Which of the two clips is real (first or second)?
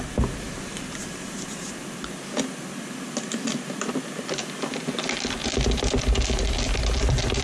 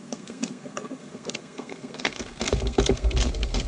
first